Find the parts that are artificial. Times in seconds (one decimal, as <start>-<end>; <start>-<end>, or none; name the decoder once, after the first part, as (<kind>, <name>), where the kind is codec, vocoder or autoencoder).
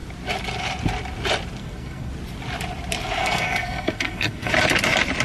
1.6-2.1 (codec, SNAC); 3.2-4.5